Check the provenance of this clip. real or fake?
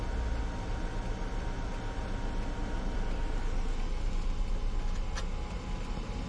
real